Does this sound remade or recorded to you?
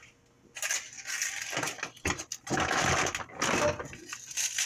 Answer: recorded